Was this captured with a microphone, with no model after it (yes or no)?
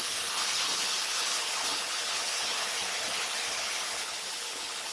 no